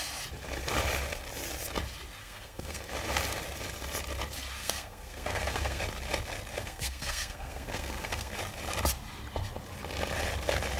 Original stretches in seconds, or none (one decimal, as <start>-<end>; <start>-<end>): 0.0-2.2; 2.8-4.6; 5.8-6.6; 8.3-10.8